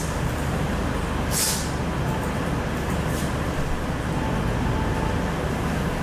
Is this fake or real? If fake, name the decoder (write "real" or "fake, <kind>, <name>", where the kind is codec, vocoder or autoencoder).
real